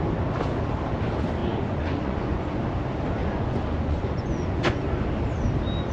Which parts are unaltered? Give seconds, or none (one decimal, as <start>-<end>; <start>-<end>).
0.0-1.4; 2.6-3.2; 4.8-5.9